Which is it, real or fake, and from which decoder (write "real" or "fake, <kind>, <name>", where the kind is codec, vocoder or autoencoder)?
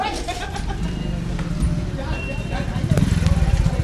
real